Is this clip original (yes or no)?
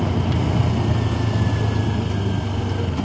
yes